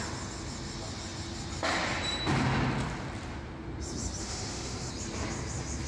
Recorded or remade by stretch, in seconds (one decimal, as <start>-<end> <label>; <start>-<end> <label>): 0.0-4.2 recorded; 4.2-4.9 remade; 4.9-5.9 recorded